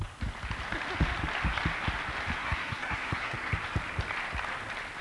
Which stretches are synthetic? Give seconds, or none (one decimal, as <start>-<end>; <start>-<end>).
2.4-3.5